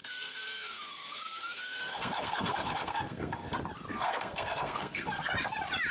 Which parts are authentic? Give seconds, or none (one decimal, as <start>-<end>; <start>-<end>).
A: 3.5-3.9; 5.3-5.9